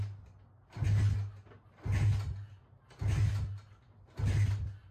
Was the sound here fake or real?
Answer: real